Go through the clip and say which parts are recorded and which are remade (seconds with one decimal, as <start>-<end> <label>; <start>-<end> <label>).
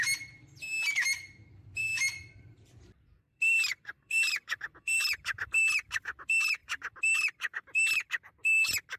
0.0-1.8 recorded; 1.8-5.7 remade; 5.7-6.6 recorded; 6.6-8.1 remade; 8.1-9.0 recorded